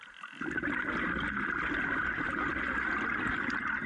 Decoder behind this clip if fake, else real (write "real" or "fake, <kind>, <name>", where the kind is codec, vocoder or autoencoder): real